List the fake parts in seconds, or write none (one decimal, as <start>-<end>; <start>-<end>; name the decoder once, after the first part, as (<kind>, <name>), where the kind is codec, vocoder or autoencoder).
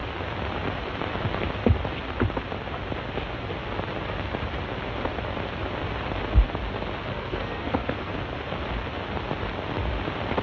7.1-8.1 (codec, SNAC)